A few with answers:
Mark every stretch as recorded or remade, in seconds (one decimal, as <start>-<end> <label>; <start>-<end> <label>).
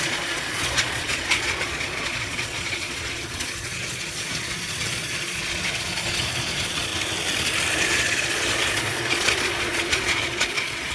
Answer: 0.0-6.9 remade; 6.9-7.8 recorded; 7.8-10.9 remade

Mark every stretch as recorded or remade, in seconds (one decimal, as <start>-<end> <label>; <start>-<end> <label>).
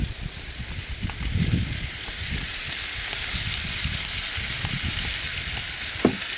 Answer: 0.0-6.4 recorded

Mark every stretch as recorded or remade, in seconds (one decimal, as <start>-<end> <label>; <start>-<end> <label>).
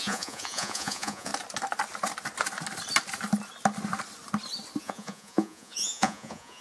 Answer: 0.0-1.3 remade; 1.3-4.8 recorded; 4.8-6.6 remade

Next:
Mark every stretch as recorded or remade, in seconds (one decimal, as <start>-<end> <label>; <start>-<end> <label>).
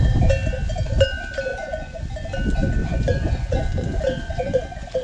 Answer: 0.0-1.5 recorded; 1.5-2.0 remade; 2.0-2.8 recorded; 2.8-4.6 remade; 4.6-5.0 recorded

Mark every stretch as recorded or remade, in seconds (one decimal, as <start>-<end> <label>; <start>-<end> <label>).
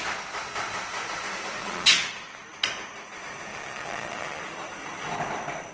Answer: 0.0-1.6 recorded; 1.6-2.1 remade; 2.1-3.5 recorded; 3.5-4.4 remade; 4.4-5.7 recorded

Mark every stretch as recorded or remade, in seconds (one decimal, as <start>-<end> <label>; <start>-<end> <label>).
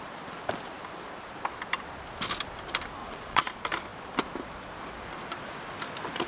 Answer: 0.0-3.0 recorded; 3.0-3.5 remade; 3.5-6.3 recorded